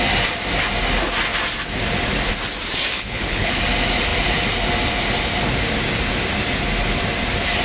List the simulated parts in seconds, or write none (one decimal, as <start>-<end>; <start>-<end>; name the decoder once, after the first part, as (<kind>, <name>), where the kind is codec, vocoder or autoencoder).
2.9-3.6 (codec, HILCodec)